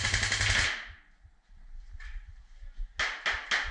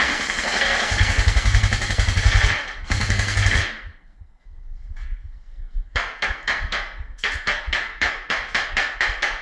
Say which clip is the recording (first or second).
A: first